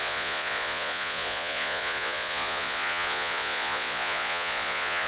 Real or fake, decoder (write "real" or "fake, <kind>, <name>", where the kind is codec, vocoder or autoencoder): fake, vocoder, Vocos